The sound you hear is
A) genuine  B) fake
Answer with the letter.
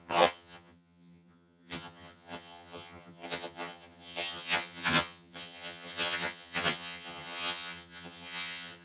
B